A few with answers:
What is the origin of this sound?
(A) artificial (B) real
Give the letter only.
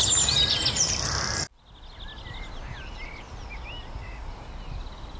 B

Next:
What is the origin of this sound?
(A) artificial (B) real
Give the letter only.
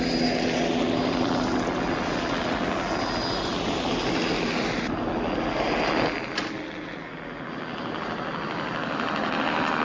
B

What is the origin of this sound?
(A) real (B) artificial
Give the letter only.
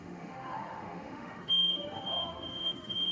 B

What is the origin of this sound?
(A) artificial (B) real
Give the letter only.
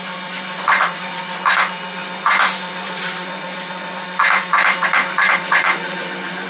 A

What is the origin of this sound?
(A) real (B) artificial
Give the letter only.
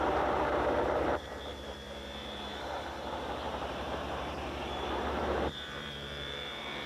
B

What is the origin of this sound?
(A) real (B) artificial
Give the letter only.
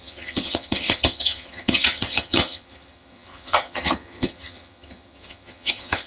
B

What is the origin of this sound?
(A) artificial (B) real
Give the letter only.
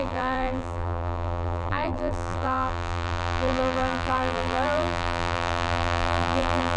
A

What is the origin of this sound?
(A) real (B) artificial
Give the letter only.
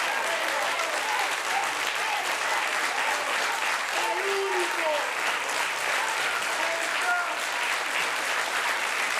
A